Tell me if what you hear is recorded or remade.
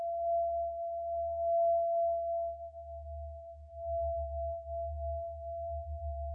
recorded